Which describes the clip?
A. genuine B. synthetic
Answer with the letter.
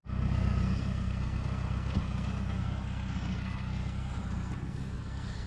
B